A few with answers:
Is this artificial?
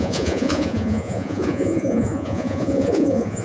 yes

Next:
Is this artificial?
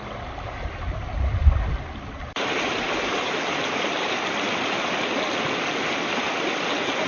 no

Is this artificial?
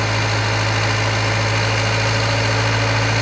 no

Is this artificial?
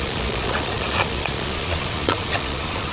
yes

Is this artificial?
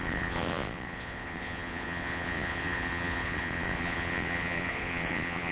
yes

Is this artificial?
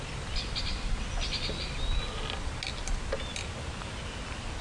no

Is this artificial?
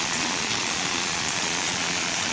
yes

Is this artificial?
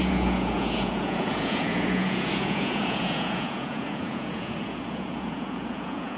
yes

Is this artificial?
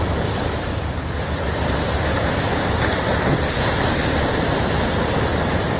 no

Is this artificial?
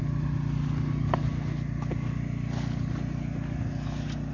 no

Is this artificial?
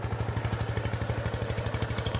no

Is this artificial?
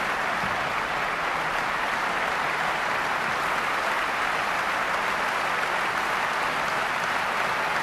no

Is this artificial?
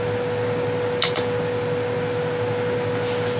no